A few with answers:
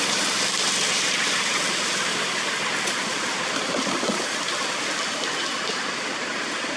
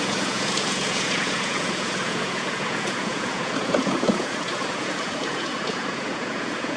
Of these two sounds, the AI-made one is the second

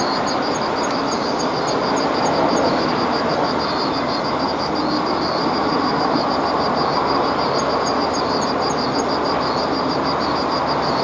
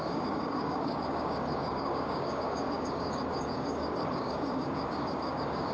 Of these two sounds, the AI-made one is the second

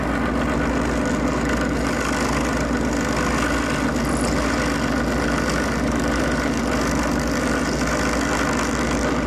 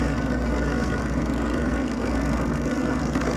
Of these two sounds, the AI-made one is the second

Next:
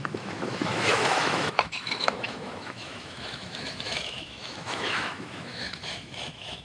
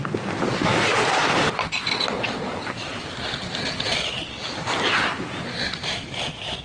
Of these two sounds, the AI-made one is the first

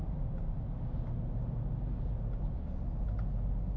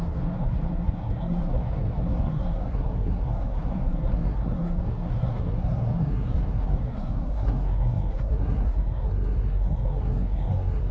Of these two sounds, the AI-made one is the second